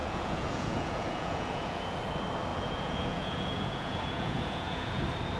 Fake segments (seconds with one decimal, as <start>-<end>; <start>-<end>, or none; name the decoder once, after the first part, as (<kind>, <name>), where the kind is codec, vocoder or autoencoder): 0.0-2.0 (vocoder, Vocos); 2.5-5.0